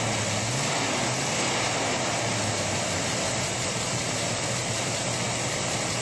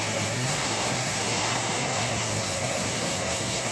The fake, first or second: second